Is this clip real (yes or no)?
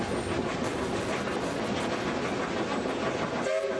yes